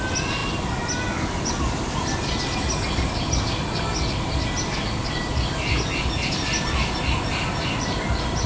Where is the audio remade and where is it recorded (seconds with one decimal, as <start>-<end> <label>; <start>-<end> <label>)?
0.0-8.5 recorded

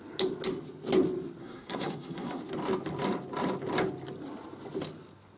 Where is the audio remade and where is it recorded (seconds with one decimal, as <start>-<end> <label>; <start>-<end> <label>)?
0.0-1.4 recorded; 1.4-2.4 remade; 2.4-5.4 recorded

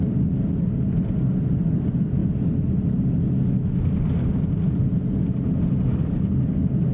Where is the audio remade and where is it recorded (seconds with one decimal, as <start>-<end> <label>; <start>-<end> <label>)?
0.0-6.9 recorded